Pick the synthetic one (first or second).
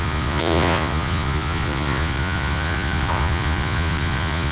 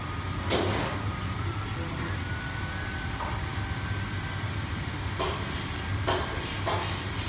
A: first